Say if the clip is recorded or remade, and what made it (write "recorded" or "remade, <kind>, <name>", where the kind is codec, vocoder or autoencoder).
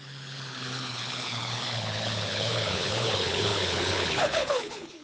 remade, codec, HILCodec